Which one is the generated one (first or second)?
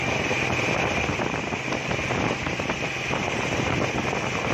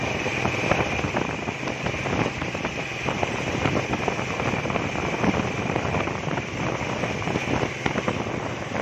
second